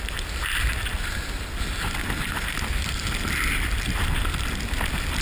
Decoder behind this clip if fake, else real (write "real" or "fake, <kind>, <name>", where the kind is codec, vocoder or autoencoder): real